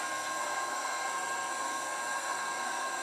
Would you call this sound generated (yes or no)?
yes